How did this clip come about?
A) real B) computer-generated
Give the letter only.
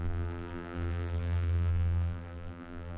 B